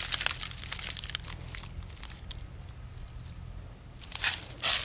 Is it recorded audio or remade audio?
recorded